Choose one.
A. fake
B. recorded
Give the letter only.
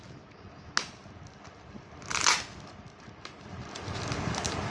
B